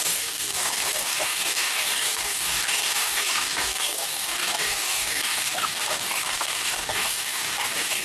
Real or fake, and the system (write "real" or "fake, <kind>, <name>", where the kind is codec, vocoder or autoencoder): fake, codec, DAC